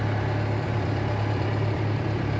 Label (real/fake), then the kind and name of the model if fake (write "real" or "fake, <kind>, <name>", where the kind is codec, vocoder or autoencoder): fake, vocoder, BigVGAN v2